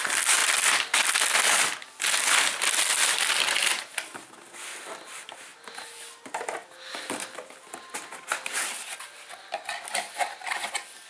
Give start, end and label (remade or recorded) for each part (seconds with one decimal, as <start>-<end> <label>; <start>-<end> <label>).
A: 0.0-11.1 recorded